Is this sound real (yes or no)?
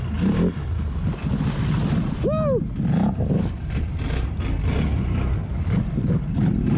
yes